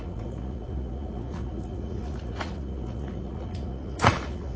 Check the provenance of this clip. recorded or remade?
remade